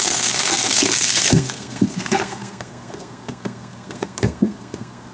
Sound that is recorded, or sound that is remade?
remade